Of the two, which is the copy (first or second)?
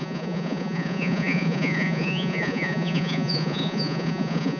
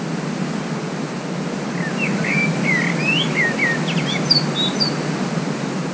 first